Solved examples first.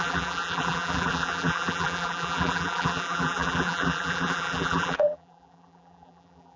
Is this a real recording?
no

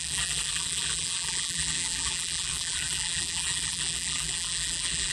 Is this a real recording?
no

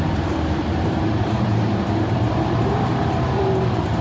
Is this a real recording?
no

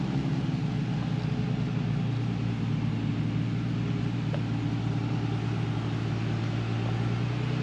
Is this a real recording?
yes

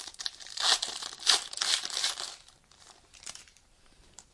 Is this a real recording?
no